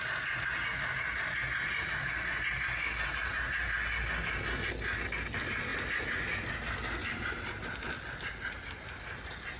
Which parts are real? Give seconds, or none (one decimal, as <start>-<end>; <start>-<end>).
0.0-7.0; 7.5-9.6